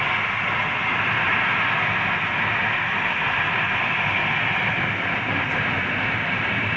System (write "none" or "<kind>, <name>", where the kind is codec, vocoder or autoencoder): none